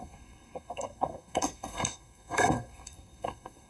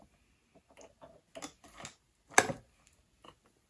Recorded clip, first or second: second